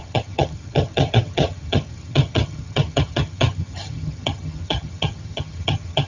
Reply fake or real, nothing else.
fake